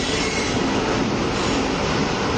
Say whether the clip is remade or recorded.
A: recorded